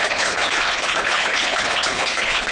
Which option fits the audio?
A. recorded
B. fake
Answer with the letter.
B